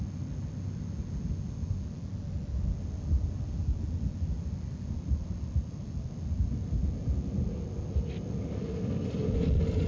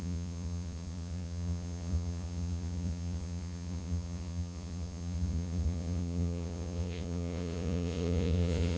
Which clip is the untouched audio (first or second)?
first